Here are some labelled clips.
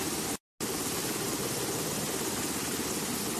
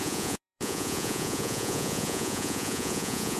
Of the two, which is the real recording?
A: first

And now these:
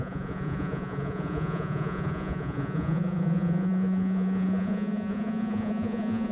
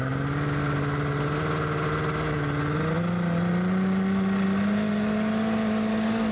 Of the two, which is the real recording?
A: second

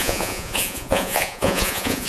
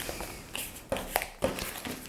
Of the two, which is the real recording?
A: second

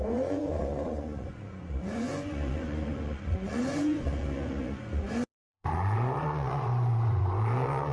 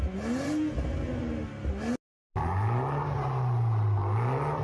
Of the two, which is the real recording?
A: second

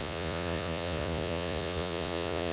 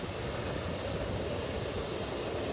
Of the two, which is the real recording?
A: second